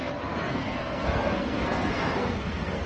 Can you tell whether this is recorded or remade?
remade